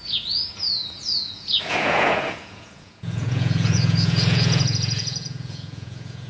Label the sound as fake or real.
fake